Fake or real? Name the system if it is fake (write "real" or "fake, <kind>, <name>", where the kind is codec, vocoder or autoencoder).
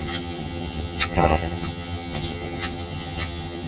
fake, vocoder, HiFi-GAN